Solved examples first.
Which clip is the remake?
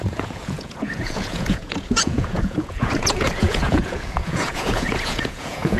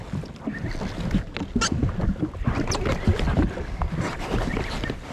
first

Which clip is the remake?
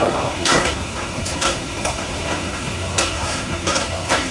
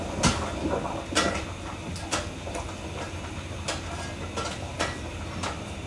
first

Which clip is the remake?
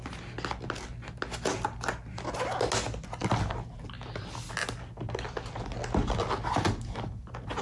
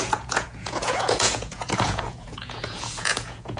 second